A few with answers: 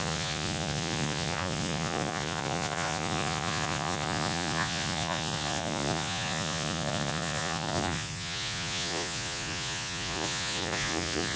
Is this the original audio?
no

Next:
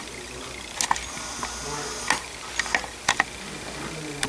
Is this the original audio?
yes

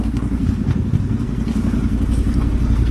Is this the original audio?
no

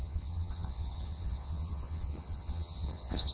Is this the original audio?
no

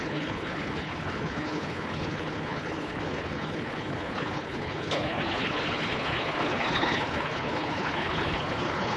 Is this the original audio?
no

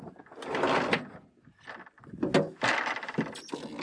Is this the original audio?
yes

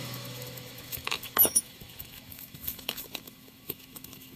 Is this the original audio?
no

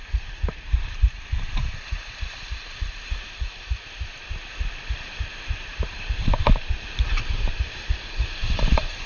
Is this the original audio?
no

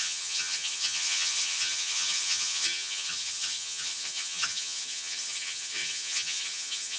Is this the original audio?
no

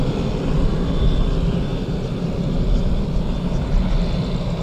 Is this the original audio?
yes